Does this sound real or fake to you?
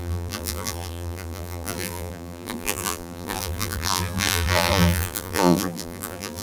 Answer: fake